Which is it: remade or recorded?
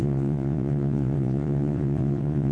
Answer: remade